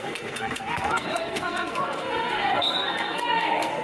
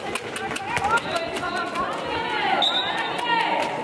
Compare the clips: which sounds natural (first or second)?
second